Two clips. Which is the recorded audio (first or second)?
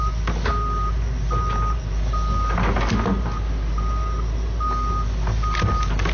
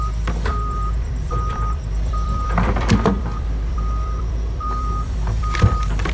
first